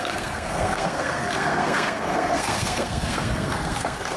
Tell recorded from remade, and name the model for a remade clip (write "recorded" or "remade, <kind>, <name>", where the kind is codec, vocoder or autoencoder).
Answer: remade, codec, SNAC